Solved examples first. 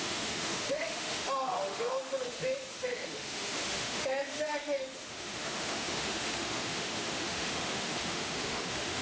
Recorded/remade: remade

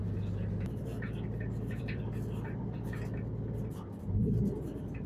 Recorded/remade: remade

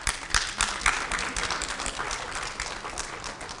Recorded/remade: recorded